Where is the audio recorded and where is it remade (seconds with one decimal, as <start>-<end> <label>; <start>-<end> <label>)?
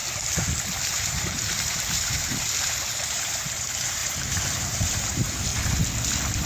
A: 0.0-0.9 recorded; 0.9-5.5 remade; 5.5-6.5 recorded